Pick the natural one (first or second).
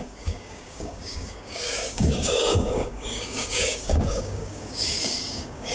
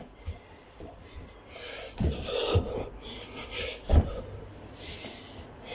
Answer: second